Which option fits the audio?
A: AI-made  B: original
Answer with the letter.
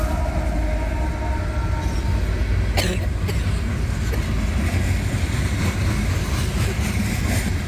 B